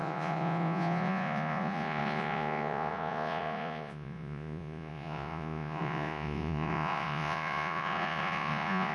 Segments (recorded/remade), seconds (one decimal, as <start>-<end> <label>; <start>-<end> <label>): 0.0-8.9 remade